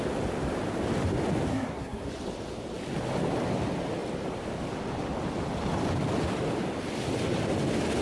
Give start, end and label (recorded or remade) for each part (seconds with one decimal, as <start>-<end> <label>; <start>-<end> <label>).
0.0-1.5 recorded; 1.5-2.1 remade; 2.1-8.0 recorded